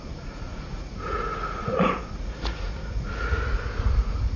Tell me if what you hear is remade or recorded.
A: remade